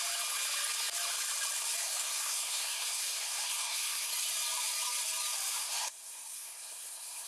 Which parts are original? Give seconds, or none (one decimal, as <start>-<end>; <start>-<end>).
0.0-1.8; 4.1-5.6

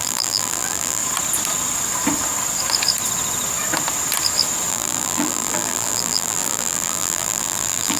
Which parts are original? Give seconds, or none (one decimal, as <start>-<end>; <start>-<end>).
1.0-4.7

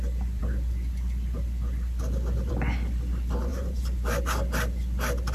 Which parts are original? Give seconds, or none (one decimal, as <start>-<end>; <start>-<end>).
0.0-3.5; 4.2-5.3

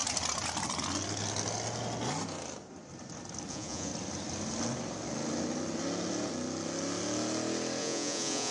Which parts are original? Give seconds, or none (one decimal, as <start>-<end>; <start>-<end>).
0.0-3.5; 3.9-7.8

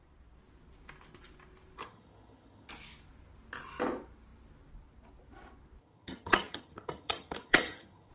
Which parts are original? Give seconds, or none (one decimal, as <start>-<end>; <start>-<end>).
0.0-1.8; 2.7-5.8

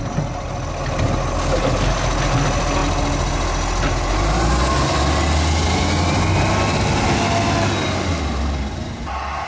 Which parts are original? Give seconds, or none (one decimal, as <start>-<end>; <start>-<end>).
0.0-9.5

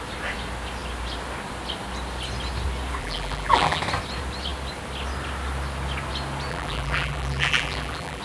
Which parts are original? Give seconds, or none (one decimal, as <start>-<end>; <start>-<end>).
0.0-3.0; 3.8-6.5